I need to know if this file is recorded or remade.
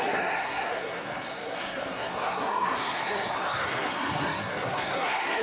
remade